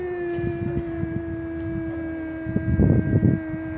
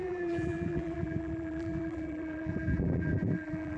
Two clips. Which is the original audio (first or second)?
first